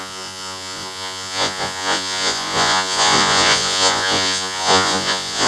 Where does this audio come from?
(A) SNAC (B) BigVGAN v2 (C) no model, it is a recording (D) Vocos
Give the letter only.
D